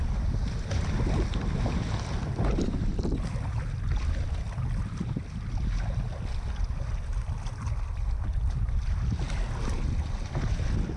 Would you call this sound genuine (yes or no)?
yes